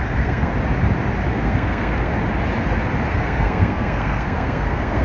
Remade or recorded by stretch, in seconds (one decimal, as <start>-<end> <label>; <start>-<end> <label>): 0.0-0.5 remade; 0.5-1.3 recorded; 1.3-2.1 remade; 2.1-3.1 recorded; 3.1-5.0 remade